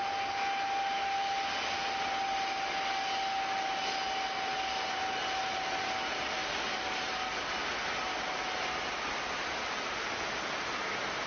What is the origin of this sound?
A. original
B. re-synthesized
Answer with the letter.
A